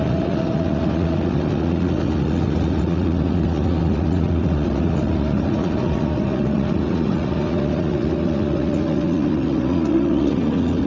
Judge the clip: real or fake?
fake